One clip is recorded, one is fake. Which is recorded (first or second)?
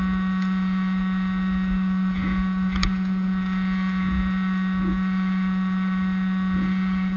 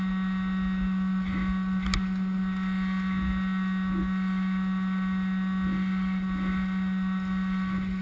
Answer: second